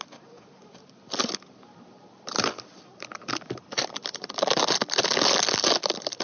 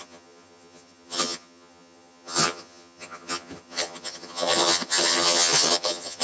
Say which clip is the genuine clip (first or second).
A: first